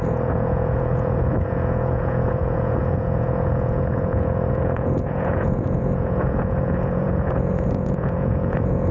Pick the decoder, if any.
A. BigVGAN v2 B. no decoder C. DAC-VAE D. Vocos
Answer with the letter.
D